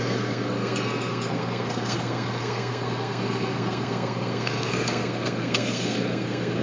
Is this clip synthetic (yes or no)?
yes